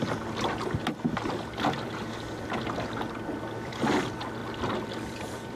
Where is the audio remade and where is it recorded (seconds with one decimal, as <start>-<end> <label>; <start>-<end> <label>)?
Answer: 0.0-4.4 recorded; 4.4-5.6 remade